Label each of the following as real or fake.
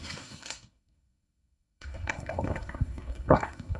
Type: fake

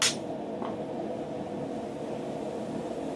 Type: real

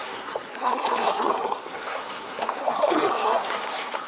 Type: fake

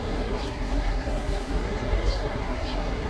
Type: fake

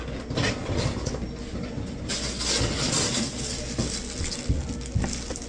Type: real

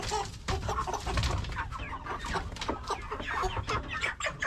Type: real